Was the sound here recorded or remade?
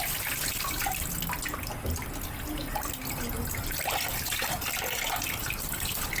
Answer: recorded